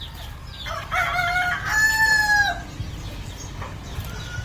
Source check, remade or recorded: recorded